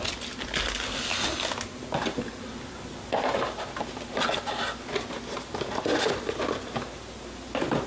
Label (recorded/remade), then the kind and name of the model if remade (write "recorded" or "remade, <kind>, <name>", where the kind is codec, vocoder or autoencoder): recorded